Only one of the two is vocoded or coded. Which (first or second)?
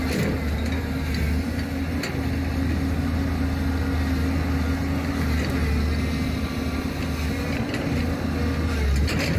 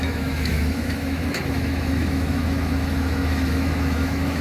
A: second